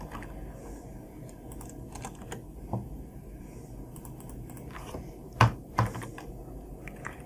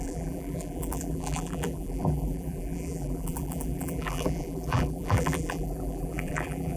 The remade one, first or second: second